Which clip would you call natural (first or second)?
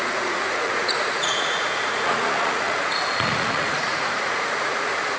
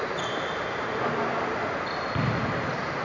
second